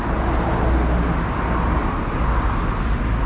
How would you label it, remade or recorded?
recorded